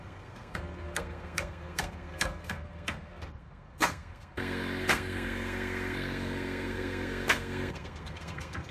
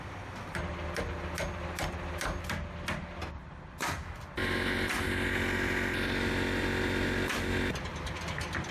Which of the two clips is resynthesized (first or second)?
first